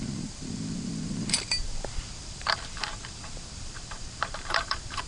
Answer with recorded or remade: remade